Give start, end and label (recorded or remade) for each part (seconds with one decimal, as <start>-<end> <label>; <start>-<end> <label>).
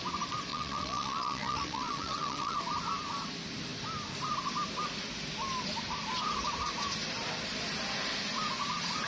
0.0-0.5 recorded; 0.5-2.6 remade; 2.6-9.1 recorded